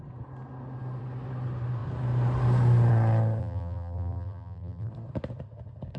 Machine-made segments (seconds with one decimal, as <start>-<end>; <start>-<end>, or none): 3.4-4.9